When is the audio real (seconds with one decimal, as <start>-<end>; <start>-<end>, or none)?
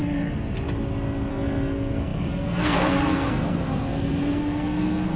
0.0-1.3